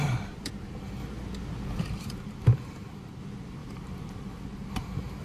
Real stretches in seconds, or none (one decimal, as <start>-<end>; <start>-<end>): 1.0-1.8